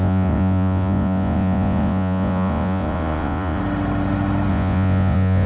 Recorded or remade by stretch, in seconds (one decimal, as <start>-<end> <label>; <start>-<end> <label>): 0.0-3.6 remade; 3.6-4.5 recorded; 4.5-5.5 remade